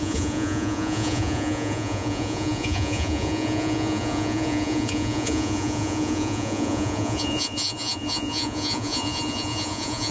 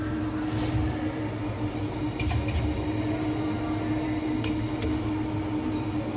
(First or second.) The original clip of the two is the second